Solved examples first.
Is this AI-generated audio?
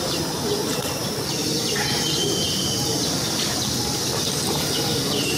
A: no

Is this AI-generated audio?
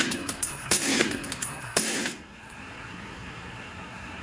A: yes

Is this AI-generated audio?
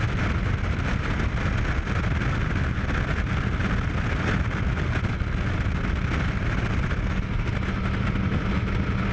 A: no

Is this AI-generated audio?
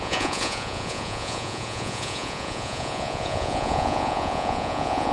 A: yes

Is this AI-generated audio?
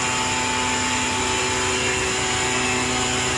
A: no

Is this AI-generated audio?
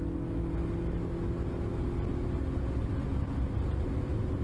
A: no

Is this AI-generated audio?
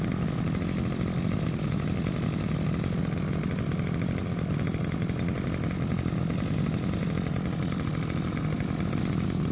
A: no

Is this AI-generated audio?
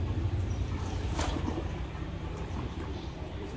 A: yes